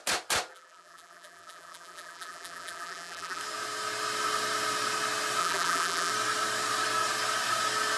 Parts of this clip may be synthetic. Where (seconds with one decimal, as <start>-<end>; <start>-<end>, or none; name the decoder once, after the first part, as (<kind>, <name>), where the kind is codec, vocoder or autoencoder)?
0.5-3.4 (vocoder, BigVGAN v2); 5.4-6.1